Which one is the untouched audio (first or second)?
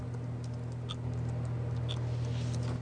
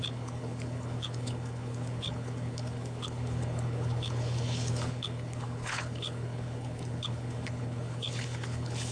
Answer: first